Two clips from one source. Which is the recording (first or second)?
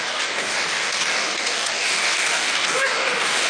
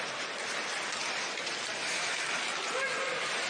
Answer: second